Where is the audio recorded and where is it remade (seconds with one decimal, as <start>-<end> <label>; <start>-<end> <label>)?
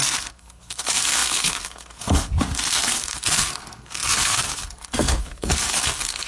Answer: 0.0-6.3 remade